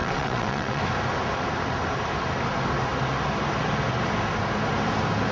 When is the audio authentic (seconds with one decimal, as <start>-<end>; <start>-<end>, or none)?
0.8-5.3